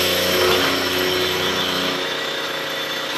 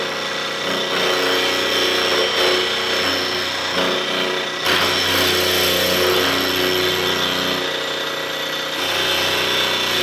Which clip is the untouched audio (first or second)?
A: second